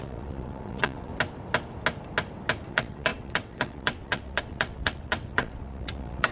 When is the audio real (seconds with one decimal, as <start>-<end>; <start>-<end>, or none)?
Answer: 1.1-2.7